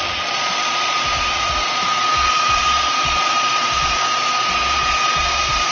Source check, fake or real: fake